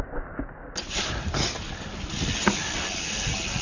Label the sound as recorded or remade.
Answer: recorded